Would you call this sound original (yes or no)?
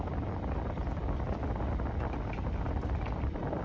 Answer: yes